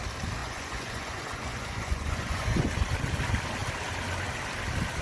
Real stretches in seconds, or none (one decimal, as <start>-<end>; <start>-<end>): 0.0-0.4; 2.7-5.0